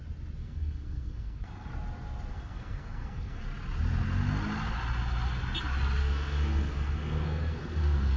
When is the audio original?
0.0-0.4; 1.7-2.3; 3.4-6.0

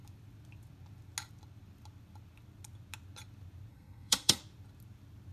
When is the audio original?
0.0-3.7; 4.4-5.3

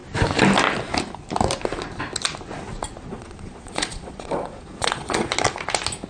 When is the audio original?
0.0-3.1; 5.3-6.1

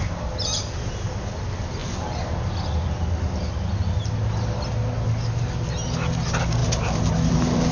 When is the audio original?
0.0-1.8; 2.4-6.6; 7.3-7.7